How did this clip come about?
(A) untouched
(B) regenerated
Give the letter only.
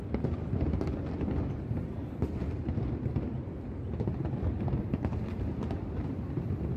A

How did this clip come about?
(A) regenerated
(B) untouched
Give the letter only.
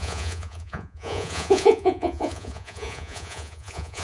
A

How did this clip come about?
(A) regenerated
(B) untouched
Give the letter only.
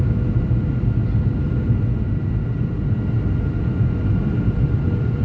B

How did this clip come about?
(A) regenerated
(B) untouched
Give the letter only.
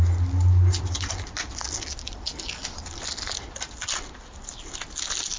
B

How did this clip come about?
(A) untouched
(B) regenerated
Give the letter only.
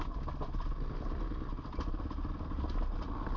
A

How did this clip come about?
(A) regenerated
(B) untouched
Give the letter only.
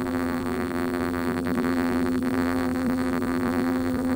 A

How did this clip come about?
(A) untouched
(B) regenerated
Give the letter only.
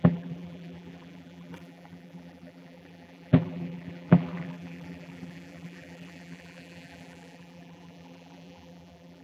B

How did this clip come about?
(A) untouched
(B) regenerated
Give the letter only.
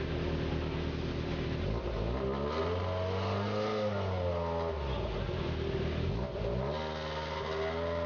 A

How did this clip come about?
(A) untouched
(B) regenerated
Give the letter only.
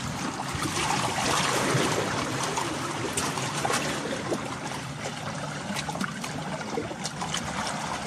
B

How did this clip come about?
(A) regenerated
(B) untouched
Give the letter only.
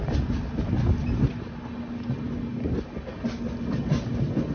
B